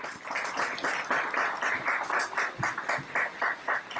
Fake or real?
real